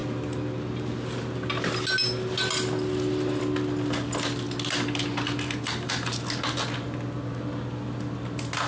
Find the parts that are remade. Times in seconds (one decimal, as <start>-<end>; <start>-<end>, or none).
none